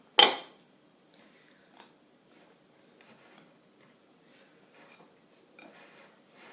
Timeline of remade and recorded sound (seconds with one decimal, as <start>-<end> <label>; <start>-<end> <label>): 0.0-6.5 recorded